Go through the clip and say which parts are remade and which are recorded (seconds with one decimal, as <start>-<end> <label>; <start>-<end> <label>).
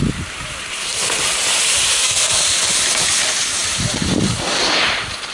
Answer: 0.0-1.9 recorded; 1.9-2.4 remade; 2.4-5.3 recorded